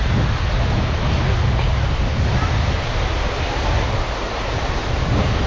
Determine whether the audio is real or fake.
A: real